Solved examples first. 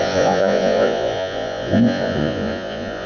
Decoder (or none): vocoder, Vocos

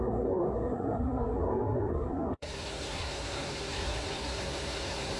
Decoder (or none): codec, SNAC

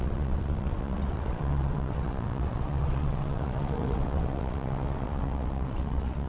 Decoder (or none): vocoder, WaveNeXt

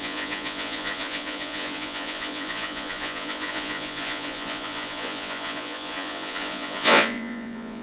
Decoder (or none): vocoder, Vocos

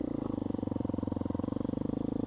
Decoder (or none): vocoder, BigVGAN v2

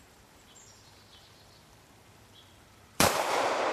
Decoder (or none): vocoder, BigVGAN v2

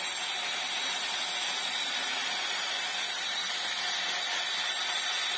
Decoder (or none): none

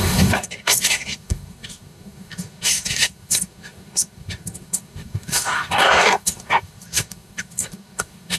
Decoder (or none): codec, SNAC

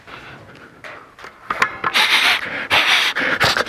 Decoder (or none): none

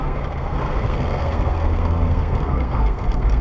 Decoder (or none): codec, SNAC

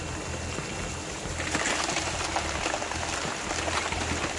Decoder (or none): none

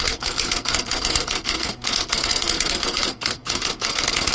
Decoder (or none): codec, SNAC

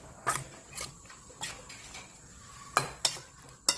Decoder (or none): none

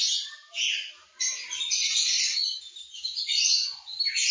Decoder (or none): none